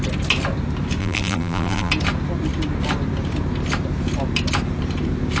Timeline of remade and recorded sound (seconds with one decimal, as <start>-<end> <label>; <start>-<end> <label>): 0.0-1.0 recorded; 1.0-1.9 remade; 1.9-5.4 recorded